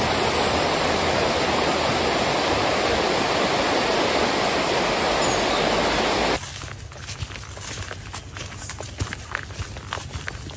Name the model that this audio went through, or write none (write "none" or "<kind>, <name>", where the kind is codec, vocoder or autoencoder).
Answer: none